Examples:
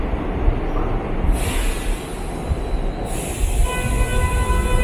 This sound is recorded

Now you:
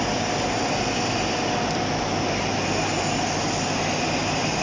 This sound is recorded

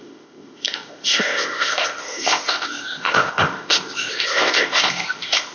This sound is remade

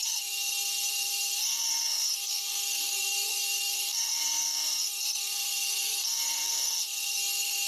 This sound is remade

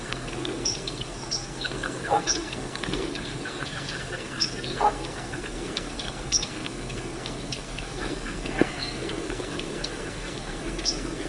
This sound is remade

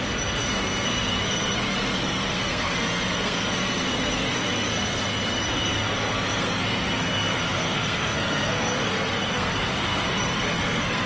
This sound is remade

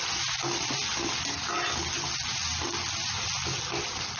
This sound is recorded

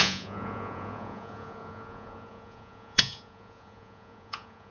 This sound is remade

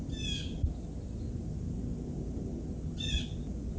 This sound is recorded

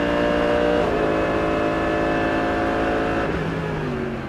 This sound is recorded